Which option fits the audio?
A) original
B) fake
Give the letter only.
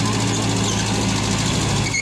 A